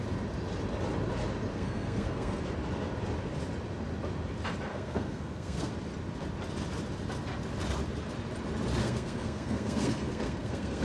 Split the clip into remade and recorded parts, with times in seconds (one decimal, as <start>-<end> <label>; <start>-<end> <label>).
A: 0.0-1.5 recorded; 1.5-2.4 remade; 2.4-4.7 recorded; 4.7-5.7 remade; 5.7-8.8 recorded; 8.8-10.8 remade